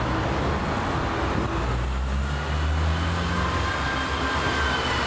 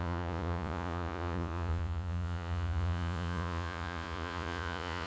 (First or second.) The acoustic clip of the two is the first